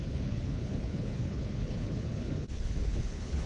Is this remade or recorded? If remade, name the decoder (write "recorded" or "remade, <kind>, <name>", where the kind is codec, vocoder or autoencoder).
remade, codec, HILCodec